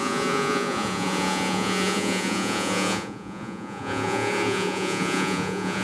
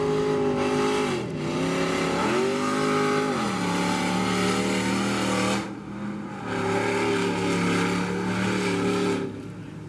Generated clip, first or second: first